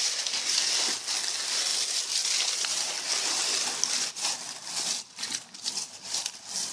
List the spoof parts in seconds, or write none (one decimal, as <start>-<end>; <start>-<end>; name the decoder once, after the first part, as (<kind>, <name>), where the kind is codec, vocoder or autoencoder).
none